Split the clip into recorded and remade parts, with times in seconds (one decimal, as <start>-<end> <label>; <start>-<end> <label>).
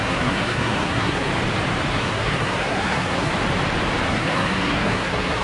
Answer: 0.0-1.3 remade; 1.3-1.9 recorded; 1.9-3.3 remade; 3.3-4.1 recorded; 4.1-5.4 remade